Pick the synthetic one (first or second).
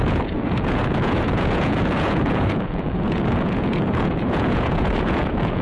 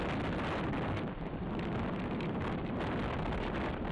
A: first